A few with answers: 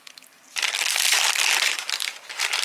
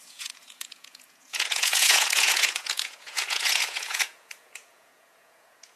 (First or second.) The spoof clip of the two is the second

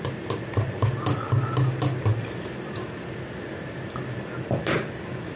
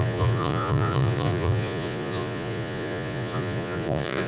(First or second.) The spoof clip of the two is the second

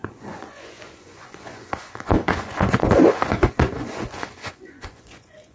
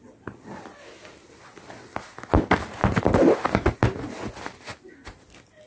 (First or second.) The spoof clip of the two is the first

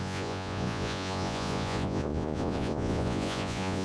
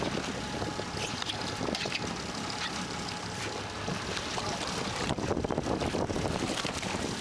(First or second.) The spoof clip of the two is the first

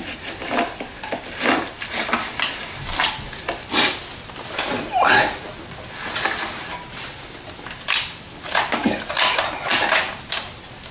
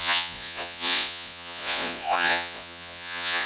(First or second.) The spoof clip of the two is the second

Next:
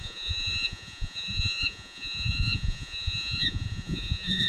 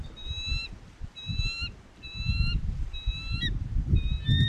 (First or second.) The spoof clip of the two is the first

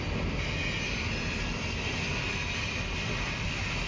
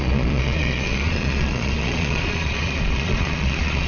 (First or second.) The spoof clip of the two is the second